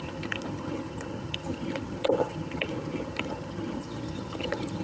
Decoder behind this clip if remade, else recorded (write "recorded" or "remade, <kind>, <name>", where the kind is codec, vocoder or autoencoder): remade, vocoder, HiFi-GAN